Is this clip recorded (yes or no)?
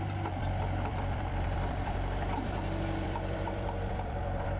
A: no